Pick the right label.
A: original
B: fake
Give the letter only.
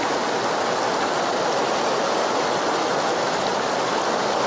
A